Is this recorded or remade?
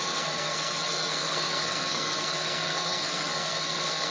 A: remade